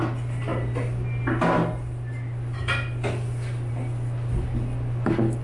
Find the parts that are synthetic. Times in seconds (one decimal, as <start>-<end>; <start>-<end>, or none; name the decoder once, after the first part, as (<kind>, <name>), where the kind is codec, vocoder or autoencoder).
none